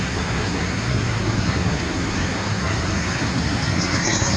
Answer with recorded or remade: remade